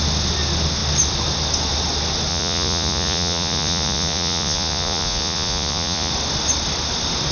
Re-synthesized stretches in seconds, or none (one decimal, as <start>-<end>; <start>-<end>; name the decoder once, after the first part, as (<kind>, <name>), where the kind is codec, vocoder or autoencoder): 2.3-6.1 (vocoder, Vocos)